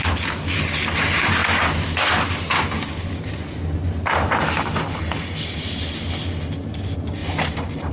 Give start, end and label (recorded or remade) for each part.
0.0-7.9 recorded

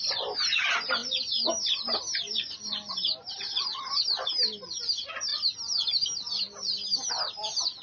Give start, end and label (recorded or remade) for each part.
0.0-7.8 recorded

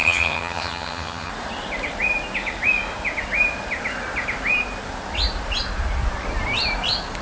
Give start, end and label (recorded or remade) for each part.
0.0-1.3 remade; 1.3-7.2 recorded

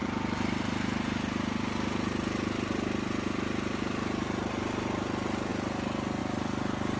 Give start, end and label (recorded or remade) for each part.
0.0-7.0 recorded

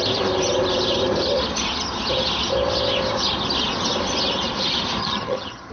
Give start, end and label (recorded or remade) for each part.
0.0-5.0 recorded; 5.0-5.7 remade